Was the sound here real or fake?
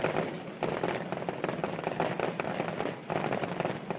real